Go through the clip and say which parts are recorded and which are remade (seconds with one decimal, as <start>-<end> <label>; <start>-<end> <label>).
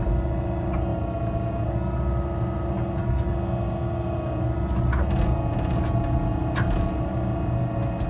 0.0-8.1 recorded